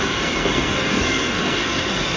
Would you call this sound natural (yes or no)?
no